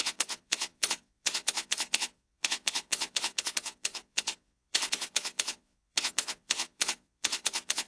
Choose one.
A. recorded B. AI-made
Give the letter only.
B